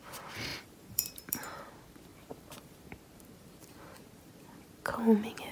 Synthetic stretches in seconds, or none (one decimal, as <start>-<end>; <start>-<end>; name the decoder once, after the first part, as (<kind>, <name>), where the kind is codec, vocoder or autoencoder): 0.5-1.7 (vocoder, BigVGAN v2); 2.1-5.5